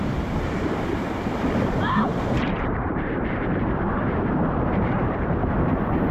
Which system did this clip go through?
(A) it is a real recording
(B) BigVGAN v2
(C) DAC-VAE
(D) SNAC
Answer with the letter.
B